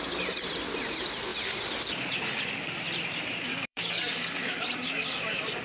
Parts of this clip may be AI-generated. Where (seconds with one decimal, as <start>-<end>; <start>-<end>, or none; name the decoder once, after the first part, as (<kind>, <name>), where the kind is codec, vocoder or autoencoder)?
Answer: 3.5-5.6 (codec, DAC)